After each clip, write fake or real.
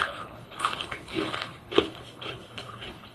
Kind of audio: fake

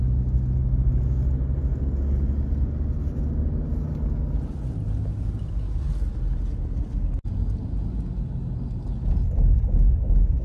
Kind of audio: real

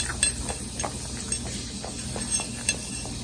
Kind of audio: real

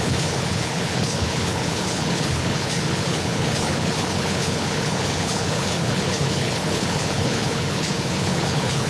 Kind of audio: fake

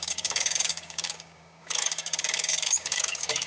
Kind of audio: fake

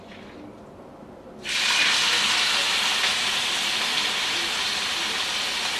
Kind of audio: real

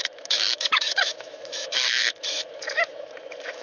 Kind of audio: fake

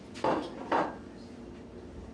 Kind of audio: real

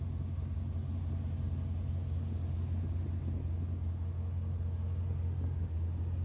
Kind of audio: real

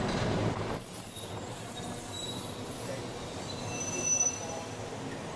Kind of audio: real